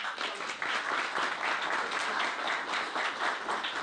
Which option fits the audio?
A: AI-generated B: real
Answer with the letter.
B